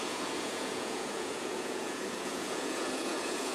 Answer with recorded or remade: remade